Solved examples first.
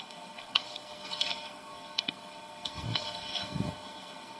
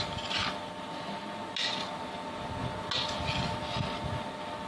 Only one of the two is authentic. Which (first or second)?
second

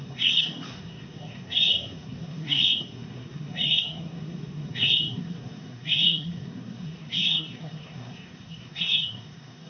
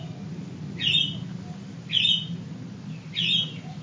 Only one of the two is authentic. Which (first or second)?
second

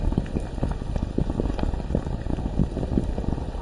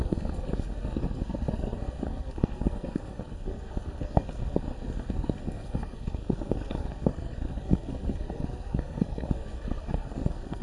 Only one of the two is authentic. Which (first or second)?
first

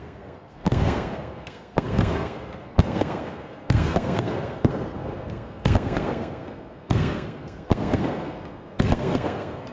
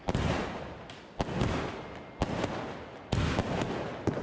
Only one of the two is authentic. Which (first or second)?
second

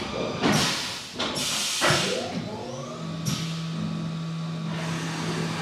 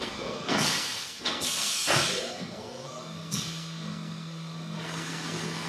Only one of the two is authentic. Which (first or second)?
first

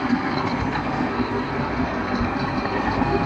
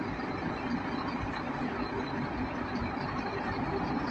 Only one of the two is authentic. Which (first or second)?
second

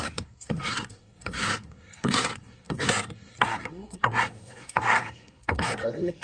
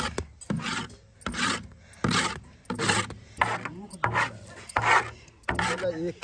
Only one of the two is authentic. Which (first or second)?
second